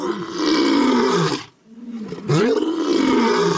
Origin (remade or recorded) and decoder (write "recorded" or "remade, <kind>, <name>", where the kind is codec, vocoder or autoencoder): recorded